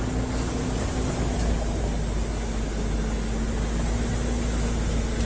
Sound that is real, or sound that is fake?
real